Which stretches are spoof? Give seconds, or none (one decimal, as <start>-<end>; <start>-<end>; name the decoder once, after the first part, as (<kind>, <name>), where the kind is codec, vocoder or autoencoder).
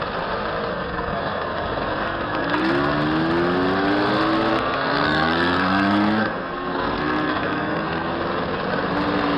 0.7-2.7 (codec, SNAC); 4.5-8.1